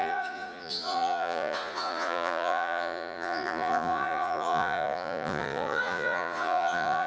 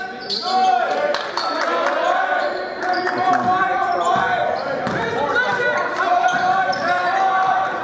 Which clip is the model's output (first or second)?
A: first